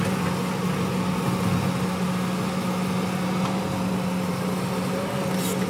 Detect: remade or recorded recorded